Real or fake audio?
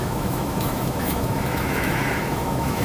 fake